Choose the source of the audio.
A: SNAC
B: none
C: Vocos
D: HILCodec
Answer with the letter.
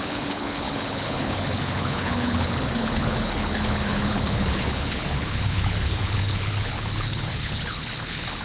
D